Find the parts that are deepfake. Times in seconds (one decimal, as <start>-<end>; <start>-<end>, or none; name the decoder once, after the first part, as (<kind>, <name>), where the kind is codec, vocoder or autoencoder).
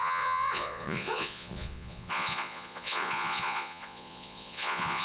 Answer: 0.0-5.0 (vocoder, Vocos)